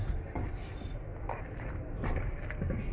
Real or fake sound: real